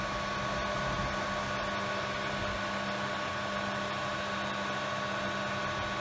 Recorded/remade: recorded